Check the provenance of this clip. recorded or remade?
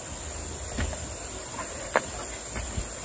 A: recorded